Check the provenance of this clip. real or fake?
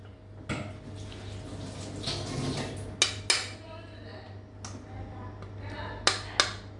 real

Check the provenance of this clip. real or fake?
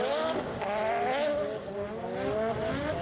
real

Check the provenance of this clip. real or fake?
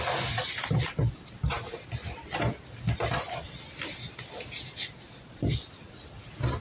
real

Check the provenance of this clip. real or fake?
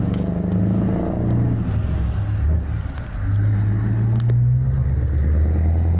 real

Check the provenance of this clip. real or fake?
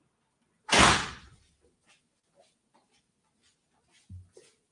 real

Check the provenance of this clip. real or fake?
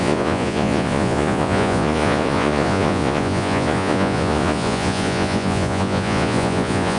fake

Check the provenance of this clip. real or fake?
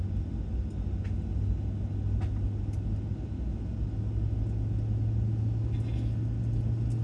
real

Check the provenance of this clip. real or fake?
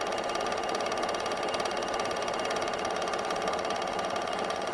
fake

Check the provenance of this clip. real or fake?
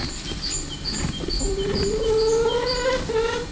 real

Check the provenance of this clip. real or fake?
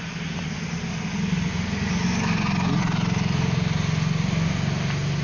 real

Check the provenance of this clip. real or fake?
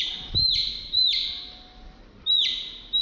real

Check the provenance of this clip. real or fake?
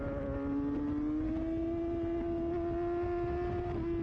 real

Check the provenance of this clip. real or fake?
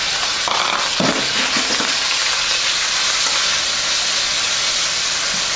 real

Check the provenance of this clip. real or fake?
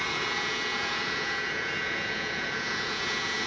fake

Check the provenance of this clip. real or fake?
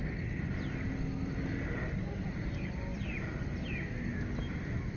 real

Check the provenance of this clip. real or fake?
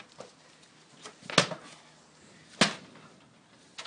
real